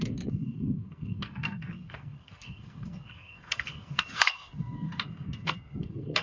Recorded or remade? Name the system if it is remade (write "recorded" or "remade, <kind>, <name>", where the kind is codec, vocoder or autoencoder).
remade, codec, SNAC